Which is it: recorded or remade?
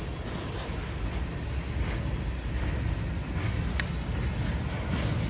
recorded